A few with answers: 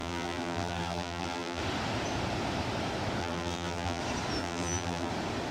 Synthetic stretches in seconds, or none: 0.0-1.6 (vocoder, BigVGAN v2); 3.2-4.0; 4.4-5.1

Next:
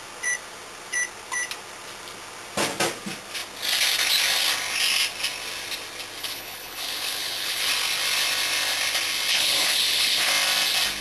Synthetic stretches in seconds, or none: 6.2-7.7 (codec, HILCodec); 9.3-10.3

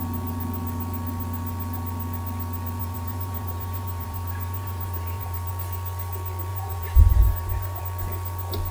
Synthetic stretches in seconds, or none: 2.8-5.5 (vocoder, BigVGAN v2); 6.5-7.8

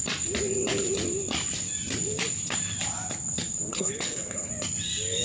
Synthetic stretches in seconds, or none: 3.7-4.5 (codec, HILCodec)

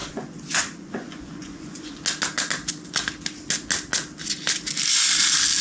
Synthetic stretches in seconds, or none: 0.0-2.0 (vocoder, Vocos)

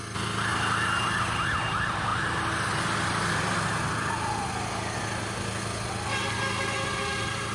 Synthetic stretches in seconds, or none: none

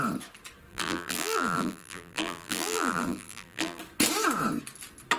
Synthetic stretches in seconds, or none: 0.7-3.8 (vocoder, BigVGAN v2)